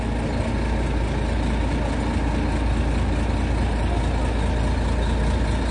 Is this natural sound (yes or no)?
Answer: yes